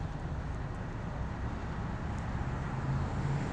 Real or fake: real